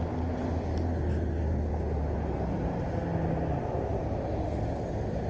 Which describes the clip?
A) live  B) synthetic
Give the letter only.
A